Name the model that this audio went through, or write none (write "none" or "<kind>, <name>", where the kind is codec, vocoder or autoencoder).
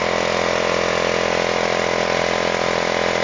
none